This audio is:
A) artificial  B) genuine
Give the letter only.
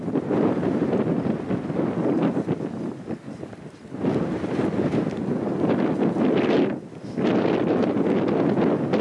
B